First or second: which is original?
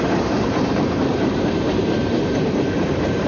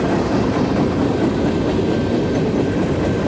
second